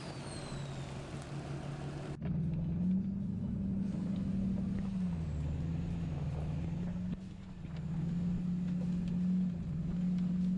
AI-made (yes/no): no